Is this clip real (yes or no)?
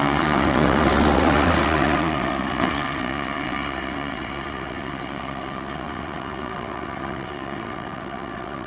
no